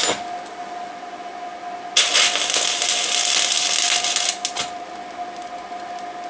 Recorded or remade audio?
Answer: recorded